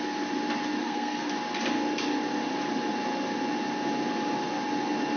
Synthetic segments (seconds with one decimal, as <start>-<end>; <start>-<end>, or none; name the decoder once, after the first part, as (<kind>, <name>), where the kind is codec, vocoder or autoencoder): 0.8-1.3 (codec, SNAC)